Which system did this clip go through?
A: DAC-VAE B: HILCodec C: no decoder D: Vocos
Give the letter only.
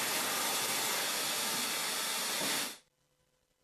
C